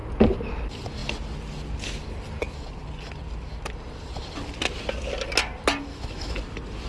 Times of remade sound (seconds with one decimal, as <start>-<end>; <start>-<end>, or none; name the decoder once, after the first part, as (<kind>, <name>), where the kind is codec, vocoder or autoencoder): 5.9-6.4 (autoencoder, DAC-VAE)